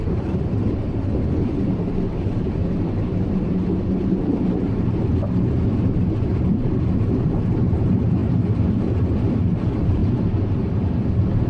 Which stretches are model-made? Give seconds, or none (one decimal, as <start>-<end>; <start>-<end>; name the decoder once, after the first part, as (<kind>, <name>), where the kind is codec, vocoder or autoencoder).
2.6-4.9 (vocoder, BigVGAN v2); 8.2-8.7